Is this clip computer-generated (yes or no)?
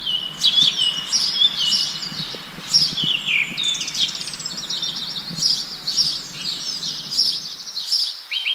yes